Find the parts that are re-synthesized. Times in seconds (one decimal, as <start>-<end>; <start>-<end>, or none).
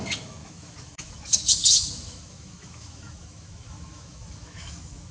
0.0-5.1